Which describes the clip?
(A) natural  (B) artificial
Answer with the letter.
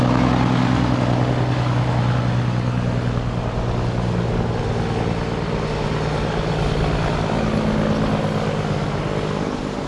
A